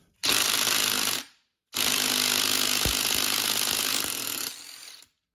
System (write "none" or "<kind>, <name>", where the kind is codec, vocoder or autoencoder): none